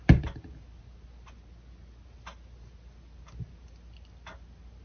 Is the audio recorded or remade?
recorded